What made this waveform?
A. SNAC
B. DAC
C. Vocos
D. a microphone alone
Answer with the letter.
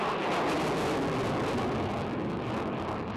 D